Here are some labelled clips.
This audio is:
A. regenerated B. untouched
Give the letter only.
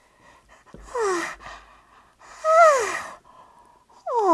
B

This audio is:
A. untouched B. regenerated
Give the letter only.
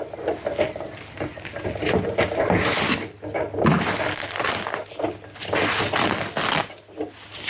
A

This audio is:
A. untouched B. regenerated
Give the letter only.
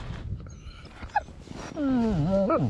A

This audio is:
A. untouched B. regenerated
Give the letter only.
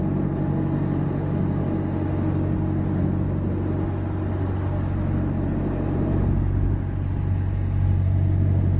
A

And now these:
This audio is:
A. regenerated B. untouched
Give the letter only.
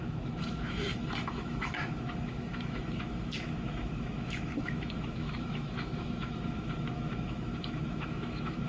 A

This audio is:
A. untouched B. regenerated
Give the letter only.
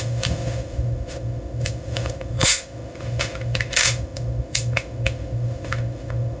B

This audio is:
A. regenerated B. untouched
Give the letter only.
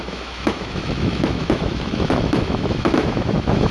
A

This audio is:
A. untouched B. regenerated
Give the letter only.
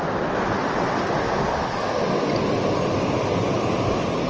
A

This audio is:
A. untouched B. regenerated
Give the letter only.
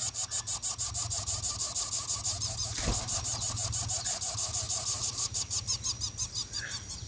A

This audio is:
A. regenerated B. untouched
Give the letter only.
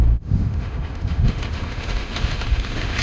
A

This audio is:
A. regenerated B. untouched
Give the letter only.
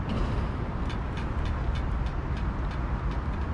B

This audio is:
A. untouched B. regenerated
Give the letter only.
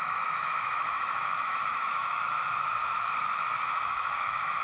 B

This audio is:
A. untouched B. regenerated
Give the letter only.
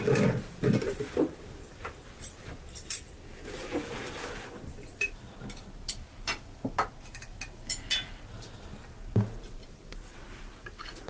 A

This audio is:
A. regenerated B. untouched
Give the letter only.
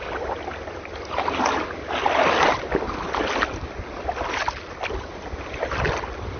B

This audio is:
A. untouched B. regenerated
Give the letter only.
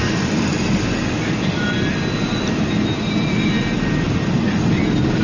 A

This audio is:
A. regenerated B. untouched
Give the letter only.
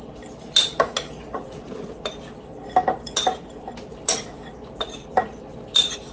B